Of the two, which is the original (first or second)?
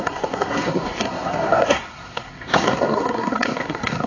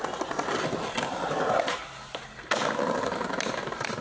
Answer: second